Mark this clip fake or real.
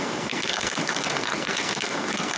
fake